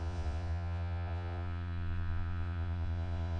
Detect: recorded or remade remade